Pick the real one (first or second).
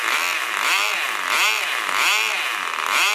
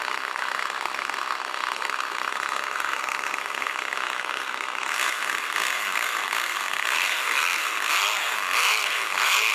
first